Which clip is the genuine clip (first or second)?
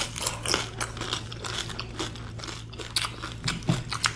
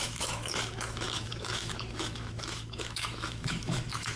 first